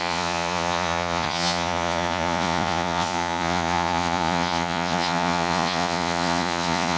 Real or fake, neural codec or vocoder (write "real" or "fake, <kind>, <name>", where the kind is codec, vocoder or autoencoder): fake, vocoder, Vocos